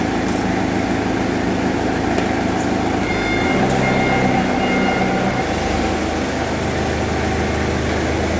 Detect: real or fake real